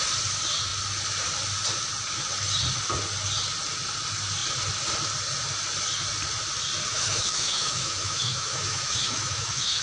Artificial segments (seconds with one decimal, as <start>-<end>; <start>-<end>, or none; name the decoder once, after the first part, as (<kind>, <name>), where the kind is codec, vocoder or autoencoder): 6.9-9.8 (autoencoder, DAC-VAE)